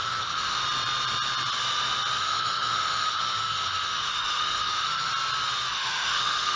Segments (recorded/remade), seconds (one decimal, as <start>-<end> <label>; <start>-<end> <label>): 0.0-0.6 remade; 0.6-2.2 recorded; 2.2-5.1 remade; 5.1-5.7 recorded; 5.7-6.6 remade